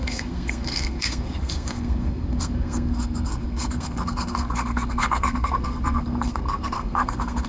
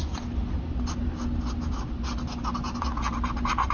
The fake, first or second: first